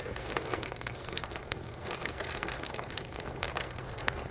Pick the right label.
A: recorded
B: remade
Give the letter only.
B